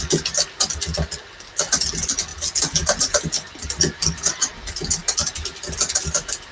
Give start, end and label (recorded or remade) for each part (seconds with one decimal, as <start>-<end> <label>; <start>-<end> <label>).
0.0-6.5 recorded